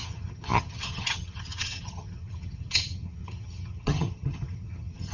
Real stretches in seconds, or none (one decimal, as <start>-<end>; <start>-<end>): none